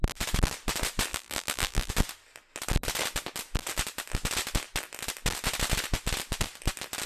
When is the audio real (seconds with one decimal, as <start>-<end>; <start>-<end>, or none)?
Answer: 0.0-1.1; 1.9-7.1